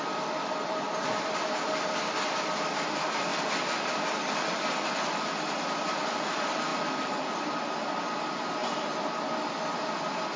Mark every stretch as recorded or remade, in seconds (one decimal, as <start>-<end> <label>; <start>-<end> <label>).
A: 0.0-6.7 remade; 6.7-7.4 recorded; 7.4-8.6 remade; 8.6-9.3 recorded; 9.3-10.4 remade